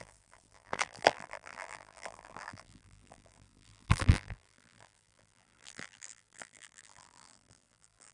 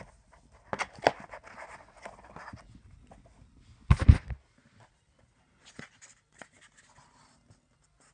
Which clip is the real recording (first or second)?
second